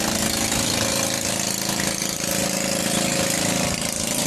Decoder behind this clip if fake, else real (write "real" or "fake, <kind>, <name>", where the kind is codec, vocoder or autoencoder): real